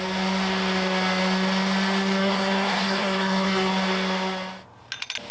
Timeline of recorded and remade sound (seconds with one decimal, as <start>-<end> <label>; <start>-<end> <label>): 0.0-2.2 recorded; 2.2-3.7 remade; 3.7-5.3 recorded